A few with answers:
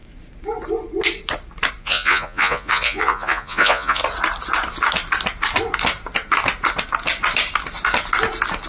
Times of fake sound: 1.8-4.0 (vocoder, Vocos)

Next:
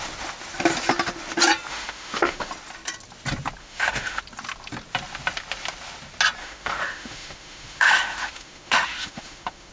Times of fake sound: 1.7-2.5 (autoencoder, DAC-VAE); 3.6-4.2; 6.4-9.7

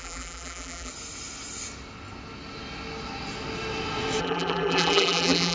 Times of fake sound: 0.0-0.9 (vocoder, BigVGAN v2); 4.2-5.5

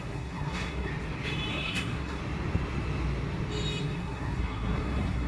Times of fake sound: 0.0-0.9 (codec, SNAC); 1.5-2.2; 3.8-5.3

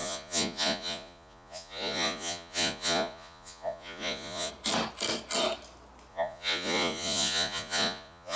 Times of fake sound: 0.0-4.5 (vocoder, Vocos); 6.1-8.4

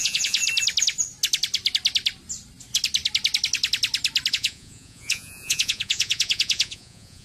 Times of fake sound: 0.0-0.4 (vocoder, Vocos); 4.3-7.2

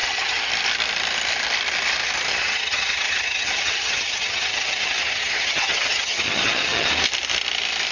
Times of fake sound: 0.0-0.5 (vocoder, HiFi-GAN); 2.3-6.9